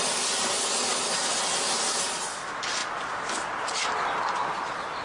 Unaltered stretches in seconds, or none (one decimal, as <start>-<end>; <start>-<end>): 1.3-1.9; 2.8-3.6